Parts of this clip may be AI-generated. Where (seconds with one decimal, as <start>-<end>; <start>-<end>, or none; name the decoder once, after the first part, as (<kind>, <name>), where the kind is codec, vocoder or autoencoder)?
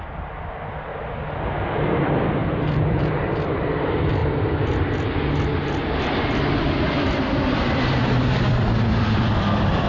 0.0-0.9 (vocoder, BigVGAN v2); 1.9-2.4; 2.9-4.2; 6.0-9.9